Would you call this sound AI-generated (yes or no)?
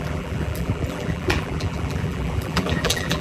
yes